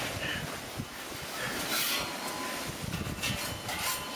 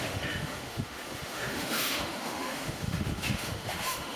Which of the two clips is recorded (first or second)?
first